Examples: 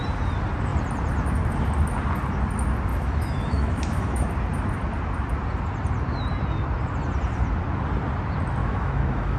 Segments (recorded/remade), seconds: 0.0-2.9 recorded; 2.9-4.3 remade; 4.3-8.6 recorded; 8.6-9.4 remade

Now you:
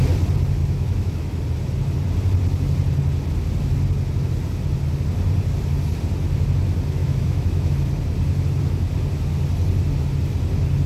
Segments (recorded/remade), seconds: 0.0-0.6 recorded; 0.6-1.4 remade; 1.4-7.0 recorded; 7.0-7.7 remade; 7.7-10.9 recorded

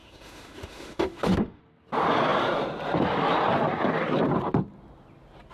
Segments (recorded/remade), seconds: 0.0-1.6 remade; 1.6-5.5 recorded

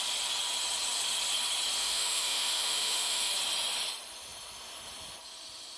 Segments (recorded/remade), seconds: 0.0-1.8 recorded; 1.8-3.3 remade; 3.3-5.8 recorded